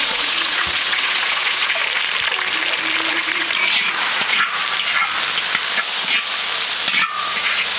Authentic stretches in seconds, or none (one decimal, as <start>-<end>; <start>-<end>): 1.8-3.1; 4.6-7.2